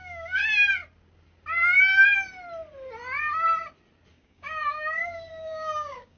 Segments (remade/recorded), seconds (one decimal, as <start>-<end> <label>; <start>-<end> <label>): 0.0-0.4 remade; 0.4-4.1 recorded; 4.1-6.2 remade